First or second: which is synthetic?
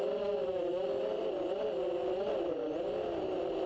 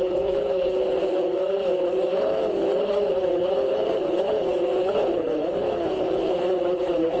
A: second